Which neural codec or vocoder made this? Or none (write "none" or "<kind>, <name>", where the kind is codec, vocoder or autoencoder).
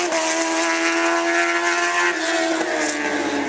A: none